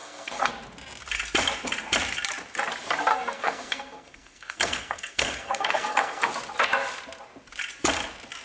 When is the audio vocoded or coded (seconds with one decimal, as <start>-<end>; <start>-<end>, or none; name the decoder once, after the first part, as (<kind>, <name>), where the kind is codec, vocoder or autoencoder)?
0.0-0.5 (codec, SNAC); 3.1-6.3